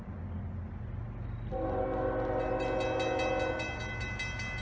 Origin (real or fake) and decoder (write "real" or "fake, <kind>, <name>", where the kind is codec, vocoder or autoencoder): real